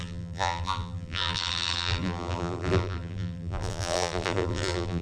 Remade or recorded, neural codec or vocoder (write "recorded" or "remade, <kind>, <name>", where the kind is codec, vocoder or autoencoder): remade, vocoder, BigVGAN v2